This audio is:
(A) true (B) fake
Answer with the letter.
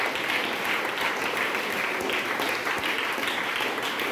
A